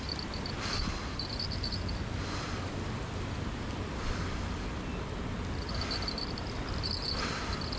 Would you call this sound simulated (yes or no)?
no